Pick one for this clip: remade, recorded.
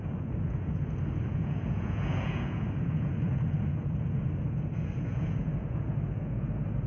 remade